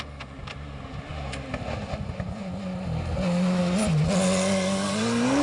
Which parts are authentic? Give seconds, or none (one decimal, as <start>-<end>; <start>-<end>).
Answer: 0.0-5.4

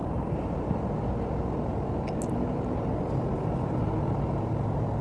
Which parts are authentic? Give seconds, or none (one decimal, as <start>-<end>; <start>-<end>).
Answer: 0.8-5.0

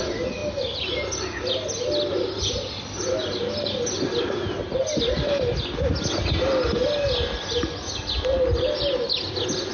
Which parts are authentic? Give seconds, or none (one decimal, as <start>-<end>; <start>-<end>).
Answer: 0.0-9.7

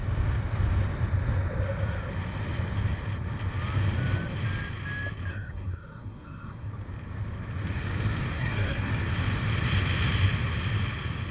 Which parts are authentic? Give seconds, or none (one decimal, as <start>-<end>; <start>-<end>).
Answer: 0.0-5.3; 6.7-8.3; 8.9-11.3

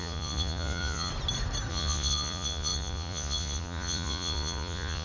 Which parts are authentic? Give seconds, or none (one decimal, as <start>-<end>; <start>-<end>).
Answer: 1.1-1.7